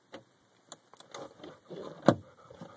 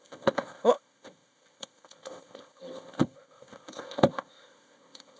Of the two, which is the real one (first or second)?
first